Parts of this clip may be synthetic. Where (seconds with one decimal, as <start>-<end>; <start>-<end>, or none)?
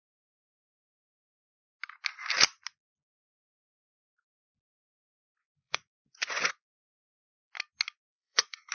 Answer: 4.1-7.5; 8.1-8.7